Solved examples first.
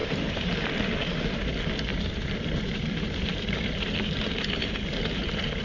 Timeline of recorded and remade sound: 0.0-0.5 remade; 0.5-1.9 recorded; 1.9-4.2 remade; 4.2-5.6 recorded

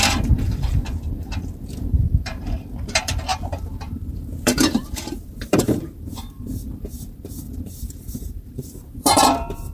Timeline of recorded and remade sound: 0.0-9.7 remade

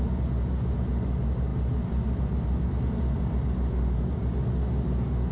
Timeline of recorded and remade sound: 0.0-1.5 recorded; 1.5-4.4 remade; 4.4-5.3 recorded

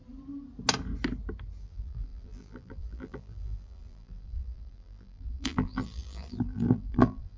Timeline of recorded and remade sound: 0.0-1.6 recorded; 1.6-7.4 remade

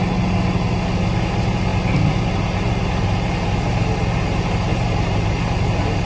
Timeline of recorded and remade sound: 0.0-6.0 recorded

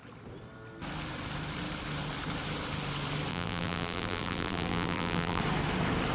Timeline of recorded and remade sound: 0.0-3.3 recorded; 3.3-5.4 remade; 5.4-6.1 recorded

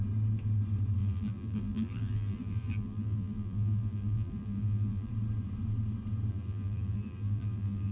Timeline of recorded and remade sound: 0.0-1.0 recorded; 1.0-5.1 remade; 5.1-6.3 recorded; 6.3-7.9 remade